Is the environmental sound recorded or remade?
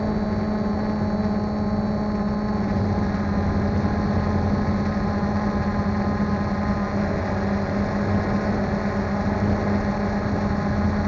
recorded